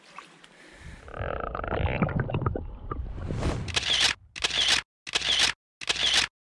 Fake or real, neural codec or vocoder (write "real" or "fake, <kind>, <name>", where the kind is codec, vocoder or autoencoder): real